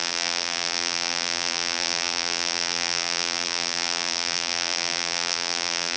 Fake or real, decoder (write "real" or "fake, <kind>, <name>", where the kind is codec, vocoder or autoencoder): fake, vocoder, BigVGAN v2